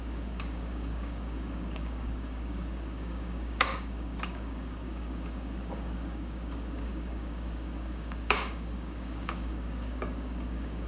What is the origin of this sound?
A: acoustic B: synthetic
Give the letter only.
B